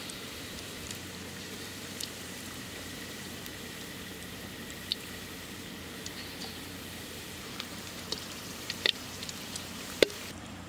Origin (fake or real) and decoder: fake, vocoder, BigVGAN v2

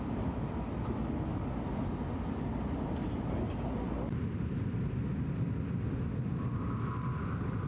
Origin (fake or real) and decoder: real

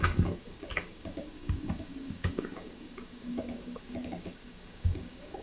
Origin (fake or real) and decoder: fake, codec, DAC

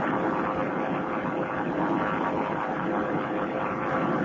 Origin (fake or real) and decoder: real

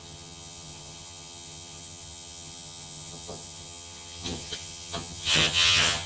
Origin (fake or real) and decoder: fake, vocoder, HiFi-GAN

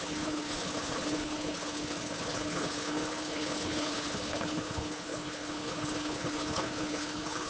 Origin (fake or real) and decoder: fake, codec, HILCodec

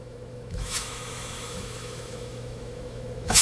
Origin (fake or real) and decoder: fake, autoencoder, DAC-VAE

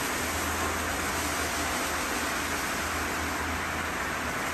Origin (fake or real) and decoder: real